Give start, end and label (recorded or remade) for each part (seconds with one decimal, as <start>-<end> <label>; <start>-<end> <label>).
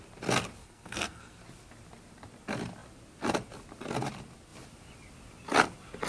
0.0-0.6 recorded; 0.6-1.4 remade; 1.4-6.1 recorded